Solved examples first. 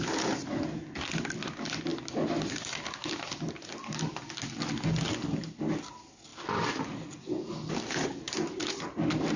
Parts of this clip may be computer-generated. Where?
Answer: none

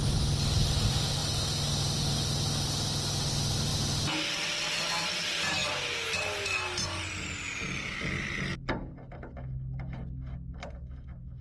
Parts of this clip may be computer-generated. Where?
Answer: none

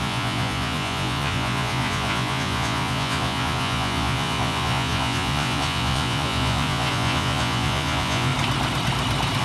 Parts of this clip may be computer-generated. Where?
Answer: 0.0-8.3 (vocoder, Vocos)

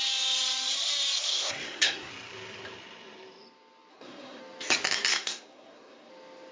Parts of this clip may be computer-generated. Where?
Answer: 1.3-2.1 (codec, SNAC); 3.9-4.4; 5.1-6.1

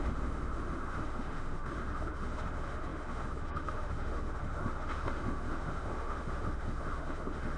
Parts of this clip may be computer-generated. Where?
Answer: 0.0-7.6 (autoencoder, DAC-VAE)

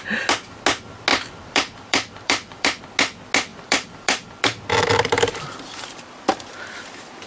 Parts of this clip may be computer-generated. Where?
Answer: 1.1-2.8 (vocoder, BigVGAN v2); 3.5-7.3

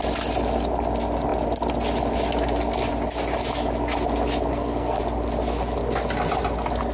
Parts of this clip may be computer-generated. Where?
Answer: 4.5-5.0 (codec, SNAC)

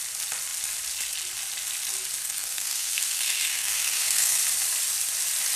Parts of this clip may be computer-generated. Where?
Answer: 2.2-4.4 (codec, SNAC)